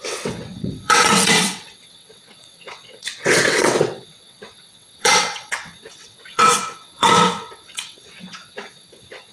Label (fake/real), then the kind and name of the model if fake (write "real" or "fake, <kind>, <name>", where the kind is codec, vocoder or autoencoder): fake, vocoder, WaveNeXt